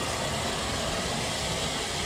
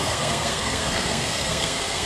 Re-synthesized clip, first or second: second